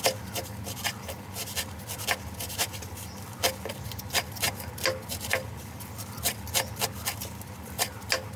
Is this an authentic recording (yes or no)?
yes